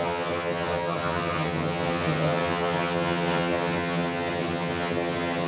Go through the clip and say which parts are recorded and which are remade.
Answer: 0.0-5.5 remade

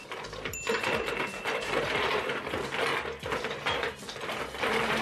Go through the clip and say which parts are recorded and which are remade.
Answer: 0.0-5.0 recorded

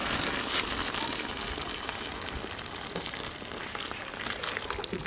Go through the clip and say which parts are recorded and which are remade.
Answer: 0.0-3.0 remade; 3.0-5.1 recorded

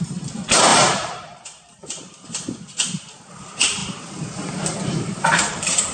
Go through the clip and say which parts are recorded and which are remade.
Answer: 0.0-3.8 remade; 3.8-5.0 recorded; 5.0-5.9 remade

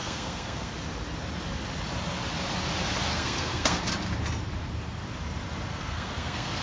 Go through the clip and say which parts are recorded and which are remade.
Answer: 0.0-0.7 remade; 0.7-3.1 recorded; 3.1-3.8 remade; 3.8-5.7 recorded; 5.7-6.6 remade